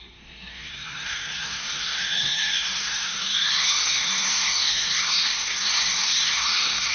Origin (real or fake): fake